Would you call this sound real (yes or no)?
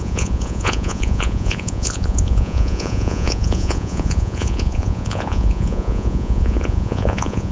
no